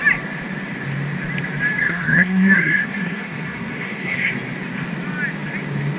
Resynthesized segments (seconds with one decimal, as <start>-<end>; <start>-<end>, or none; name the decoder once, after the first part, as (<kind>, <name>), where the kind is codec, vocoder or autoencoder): 1.8-4.3 (codec, SNAC)